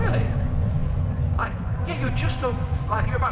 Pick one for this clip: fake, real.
fake